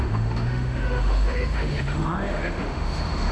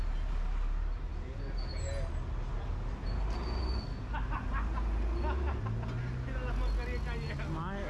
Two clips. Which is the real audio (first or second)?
second